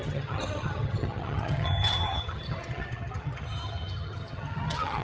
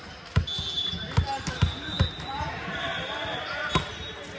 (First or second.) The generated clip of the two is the first